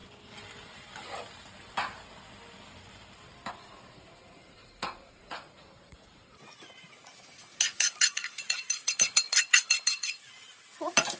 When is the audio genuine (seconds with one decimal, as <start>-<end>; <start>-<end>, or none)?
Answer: 0.0-3.5